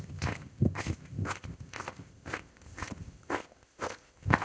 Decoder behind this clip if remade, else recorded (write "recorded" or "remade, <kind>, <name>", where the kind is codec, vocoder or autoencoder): remade, codec, ZipCodec